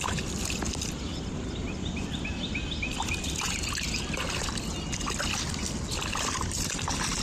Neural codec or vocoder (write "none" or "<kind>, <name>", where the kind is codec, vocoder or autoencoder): none